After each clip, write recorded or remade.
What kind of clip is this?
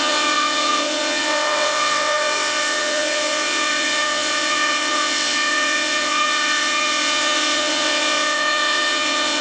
remade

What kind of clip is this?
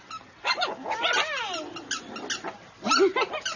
recorded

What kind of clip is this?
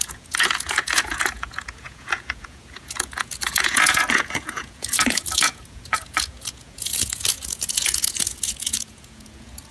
remade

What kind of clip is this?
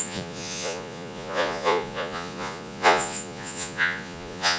remade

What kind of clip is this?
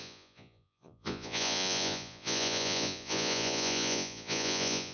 remade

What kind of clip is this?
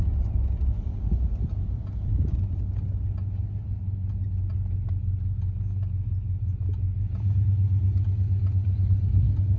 recorded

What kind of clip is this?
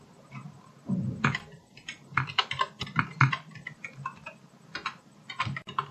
remade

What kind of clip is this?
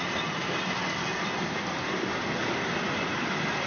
recorded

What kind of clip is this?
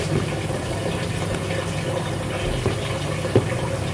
remade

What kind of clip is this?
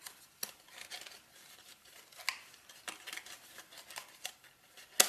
recorded